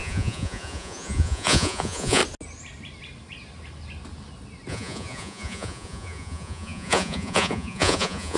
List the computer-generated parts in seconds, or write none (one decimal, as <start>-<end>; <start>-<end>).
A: 0.0-2.2; 4.7-8.4